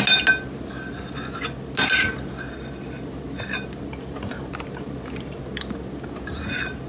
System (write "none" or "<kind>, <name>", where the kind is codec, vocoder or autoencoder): none